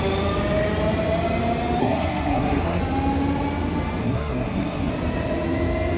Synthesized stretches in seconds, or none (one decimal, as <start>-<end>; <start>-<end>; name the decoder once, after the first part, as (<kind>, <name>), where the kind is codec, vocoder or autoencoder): 1.8-2.8 (codec, SNAC); 4.0-4.9